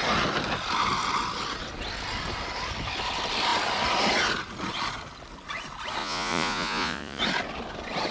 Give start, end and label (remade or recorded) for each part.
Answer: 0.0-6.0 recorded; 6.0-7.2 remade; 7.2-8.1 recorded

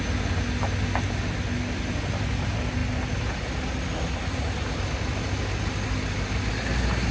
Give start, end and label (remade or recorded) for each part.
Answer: 0.0-7.1 recorded

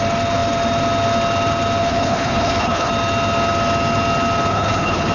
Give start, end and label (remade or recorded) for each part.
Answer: 0.0-1.8 recorded; 1.8-2.9 remade; 2.9-4.5 recorded; 4.5-5.1 remade

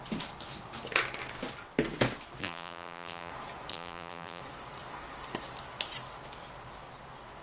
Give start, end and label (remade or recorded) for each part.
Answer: 0.0-2.4 recorded; 2.4-3.3 remade; 3.3-3.7 recorded; 3.7-4.4 remade; 4.4-7.4 recorded

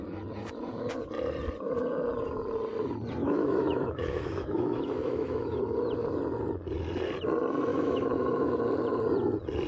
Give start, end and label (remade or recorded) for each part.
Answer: 0.0-3.2 recorded; 3.2-5.6 remade; 5.6-7.7 recorded; 7.7-8.6 remade; 8.6-9.7 recorded